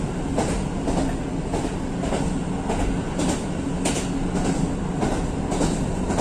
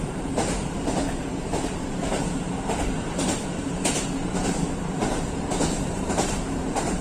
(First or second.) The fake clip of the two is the second